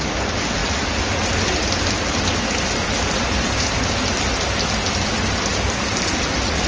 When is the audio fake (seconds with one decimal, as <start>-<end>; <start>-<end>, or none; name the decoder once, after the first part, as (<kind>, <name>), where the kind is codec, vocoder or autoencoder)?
none